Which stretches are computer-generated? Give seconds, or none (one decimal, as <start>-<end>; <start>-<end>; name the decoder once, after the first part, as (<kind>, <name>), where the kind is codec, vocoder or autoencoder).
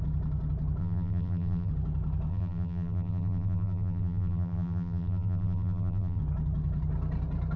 0.8-1.7 (vocoder, BigVGAN v2); 2.3-6.2